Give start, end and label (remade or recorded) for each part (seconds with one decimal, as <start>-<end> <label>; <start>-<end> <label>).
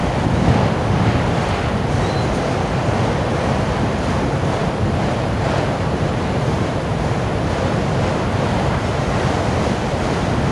0.0-4.6 recorded; 4.6-6.8 remade; 6.8-10.5 recorded